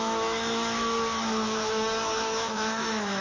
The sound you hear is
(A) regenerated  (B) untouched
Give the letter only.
A